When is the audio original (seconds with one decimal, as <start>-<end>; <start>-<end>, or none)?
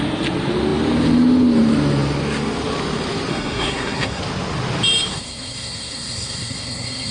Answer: 0.0-3.3; 4.2-5.1